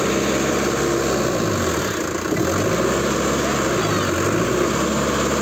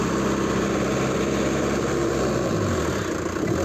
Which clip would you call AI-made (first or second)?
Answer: second